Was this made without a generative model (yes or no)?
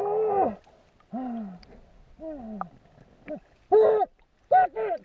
yes